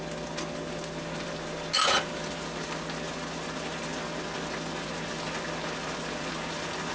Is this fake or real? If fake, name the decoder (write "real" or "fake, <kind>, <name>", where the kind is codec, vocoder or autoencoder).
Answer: real